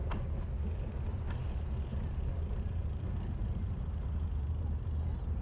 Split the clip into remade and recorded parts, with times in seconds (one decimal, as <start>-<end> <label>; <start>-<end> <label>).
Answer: 0.0-1.9 recorded; 1.9-3.8 remade; 3.8-5.4 recorded